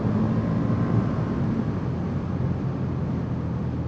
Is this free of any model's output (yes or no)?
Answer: yes